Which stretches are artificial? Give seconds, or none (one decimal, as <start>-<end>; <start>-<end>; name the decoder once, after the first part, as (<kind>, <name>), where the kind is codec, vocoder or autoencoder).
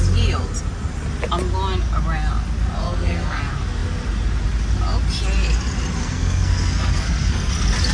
2.8-3.4 (codec, SNAC); 6.0-7.5